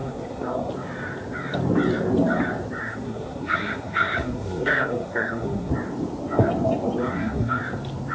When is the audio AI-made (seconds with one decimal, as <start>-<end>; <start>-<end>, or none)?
0.0-0.7; 2.8-5.7; 7.0-7.6